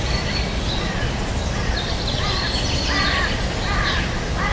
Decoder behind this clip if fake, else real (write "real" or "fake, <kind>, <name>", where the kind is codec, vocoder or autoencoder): real